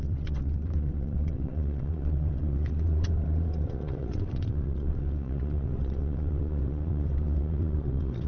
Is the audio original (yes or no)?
no